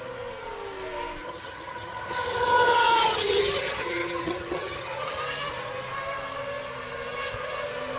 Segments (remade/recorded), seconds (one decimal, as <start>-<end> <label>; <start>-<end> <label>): 0.0-1.2 recorded; 1.2-5.2 remade; 5.2-8.0 recorded